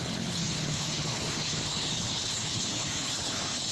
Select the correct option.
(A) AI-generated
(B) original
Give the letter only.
A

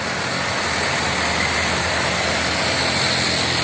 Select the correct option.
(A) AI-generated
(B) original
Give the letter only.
B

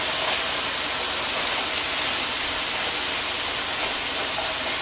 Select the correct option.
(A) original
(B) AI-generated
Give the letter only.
A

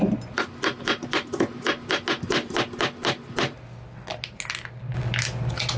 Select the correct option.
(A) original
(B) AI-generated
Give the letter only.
A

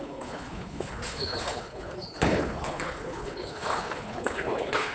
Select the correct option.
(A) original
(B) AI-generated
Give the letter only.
B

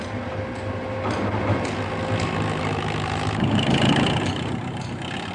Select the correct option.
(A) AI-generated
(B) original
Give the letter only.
B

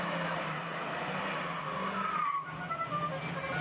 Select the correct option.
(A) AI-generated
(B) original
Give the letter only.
B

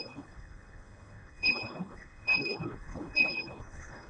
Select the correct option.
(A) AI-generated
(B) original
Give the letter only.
A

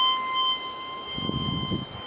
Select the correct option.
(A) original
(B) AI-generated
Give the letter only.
A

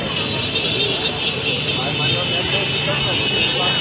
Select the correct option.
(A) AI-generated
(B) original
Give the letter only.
B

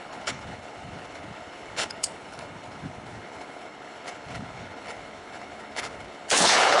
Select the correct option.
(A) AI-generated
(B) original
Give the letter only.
A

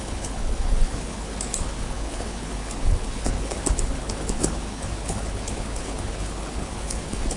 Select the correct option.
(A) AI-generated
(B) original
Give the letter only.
A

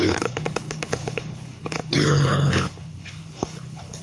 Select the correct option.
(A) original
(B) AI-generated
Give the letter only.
B